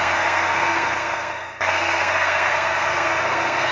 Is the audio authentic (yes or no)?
no